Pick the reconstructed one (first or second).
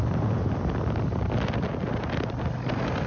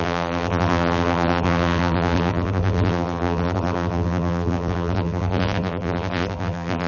second